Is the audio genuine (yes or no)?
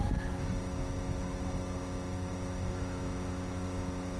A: yes